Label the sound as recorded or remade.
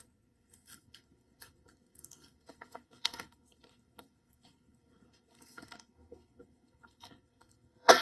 remade